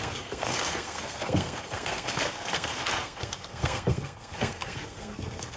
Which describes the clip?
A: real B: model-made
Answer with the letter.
B